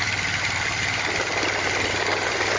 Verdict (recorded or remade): recorded